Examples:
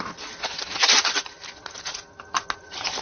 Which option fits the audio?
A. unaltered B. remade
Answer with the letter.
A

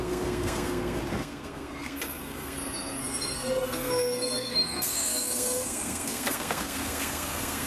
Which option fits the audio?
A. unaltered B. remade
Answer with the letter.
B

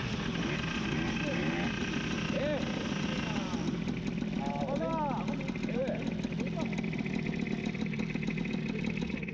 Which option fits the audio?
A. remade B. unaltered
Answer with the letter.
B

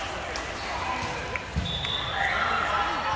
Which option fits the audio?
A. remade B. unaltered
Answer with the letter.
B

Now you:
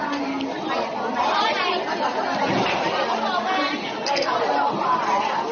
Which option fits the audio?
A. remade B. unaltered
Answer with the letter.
B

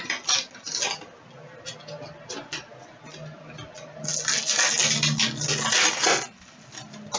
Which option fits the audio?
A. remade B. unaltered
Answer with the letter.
B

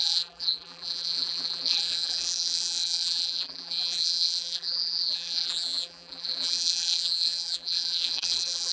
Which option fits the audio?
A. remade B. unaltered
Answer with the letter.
A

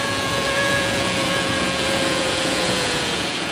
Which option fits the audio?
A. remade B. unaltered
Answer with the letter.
A